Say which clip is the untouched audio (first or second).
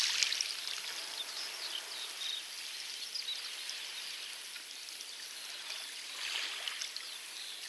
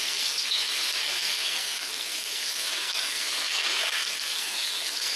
first